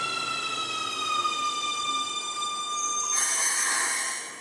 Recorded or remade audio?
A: recorded